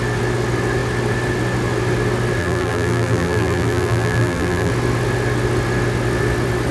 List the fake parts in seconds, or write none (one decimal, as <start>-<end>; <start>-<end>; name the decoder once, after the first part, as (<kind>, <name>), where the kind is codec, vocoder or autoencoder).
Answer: 2.4-4.7 (vocoder, BigVGAN v2)